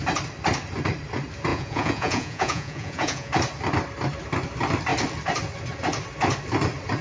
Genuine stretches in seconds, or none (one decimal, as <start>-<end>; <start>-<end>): 0.0-1.5; 3.3-7.0